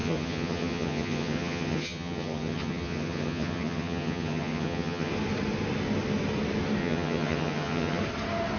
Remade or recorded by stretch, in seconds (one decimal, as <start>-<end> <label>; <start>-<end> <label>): 0.0-5.1 remade; 5.1-6.8 recorded; 6.8-8.0 remade; 8.0-8.6 recorded